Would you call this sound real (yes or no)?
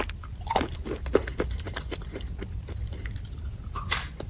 no